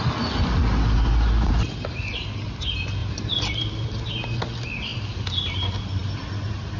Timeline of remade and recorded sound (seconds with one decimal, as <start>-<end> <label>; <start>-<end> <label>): 0.0-3.0 recorded; 3.0-4.0 remade; 4.0-6.0 recorded; 6.0-6.8 remade